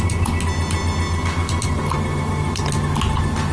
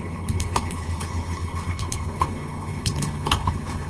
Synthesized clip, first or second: second